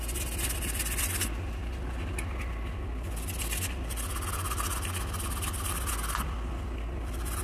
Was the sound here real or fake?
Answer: real